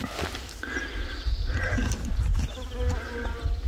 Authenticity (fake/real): real